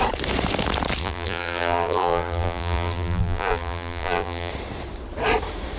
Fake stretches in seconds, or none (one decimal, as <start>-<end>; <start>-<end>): 1.0-4.5